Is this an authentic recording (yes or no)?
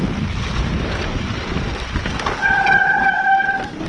no